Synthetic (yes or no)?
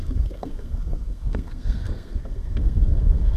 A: yes